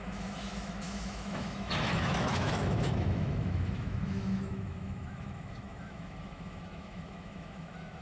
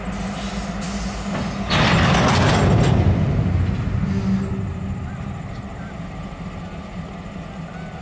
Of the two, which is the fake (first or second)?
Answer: first